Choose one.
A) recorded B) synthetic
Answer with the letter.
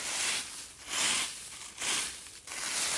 A